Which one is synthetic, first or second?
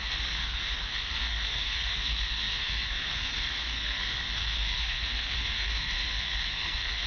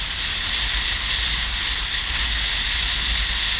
first